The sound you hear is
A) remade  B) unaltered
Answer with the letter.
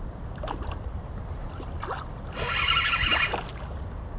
B